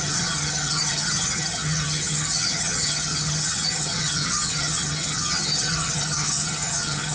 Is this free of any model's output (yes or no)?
no